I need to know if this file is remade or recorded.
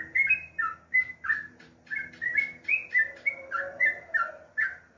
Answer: recorded